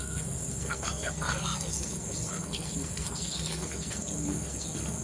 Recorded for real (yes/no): no